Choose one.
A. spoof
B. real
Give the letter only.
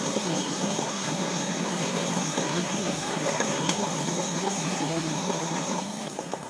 A